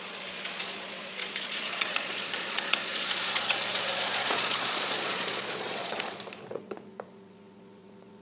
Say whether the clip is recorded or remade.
remade